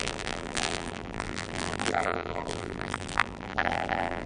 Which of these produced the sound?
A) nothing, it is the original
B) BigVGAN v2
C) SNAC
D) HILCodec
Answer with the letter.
B